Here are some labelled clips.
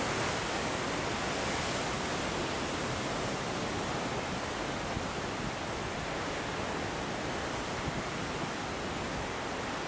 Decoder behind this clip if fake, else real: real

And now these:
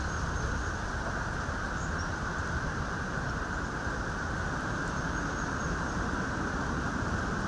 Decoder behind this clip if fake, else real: real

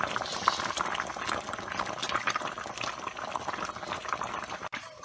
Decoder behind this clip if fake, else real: real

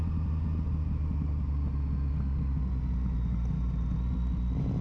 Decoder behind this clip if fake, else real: real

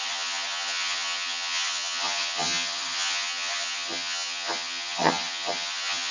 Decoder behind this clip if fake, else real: fake, vocoder, HiFi-GAN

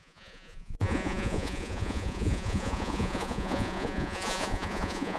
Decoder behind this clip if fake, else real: fake, vocoder, Vocos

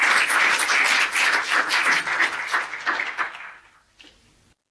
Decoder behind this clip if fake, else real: real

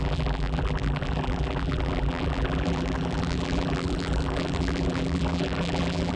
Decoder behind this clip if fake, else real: fake, vocoder, BigVGAN v2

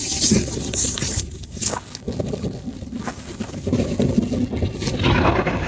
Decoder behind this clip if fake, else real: real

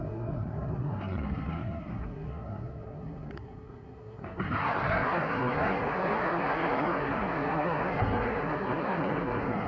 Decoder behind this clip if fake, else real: fake, codec, SNAC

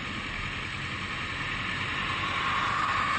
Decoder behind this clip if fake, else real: real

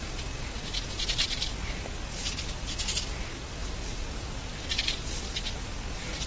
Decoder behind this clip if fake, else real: real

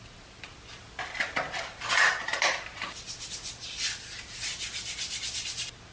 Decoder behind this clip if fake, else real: real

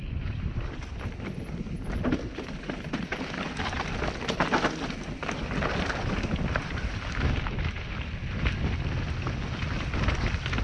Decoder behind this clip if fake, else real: real